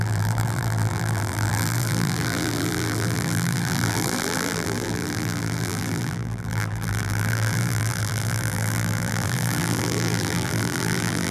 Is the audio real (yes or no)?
no